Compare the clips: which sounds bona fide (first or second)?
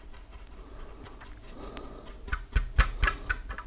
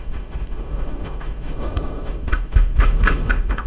first